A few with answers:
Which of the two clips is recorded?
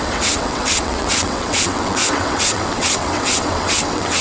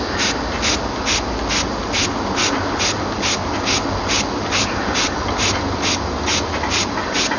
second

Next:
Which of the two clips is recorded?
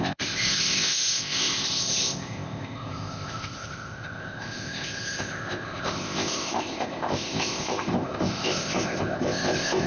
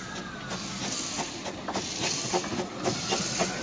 second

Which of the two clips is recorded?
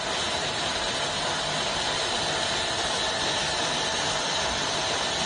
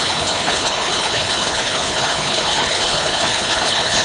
first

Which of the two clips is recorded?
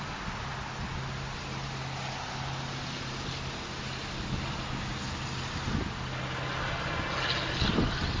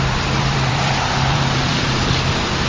first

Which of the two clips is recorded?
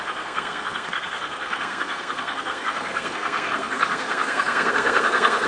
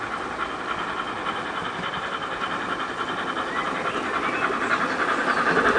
second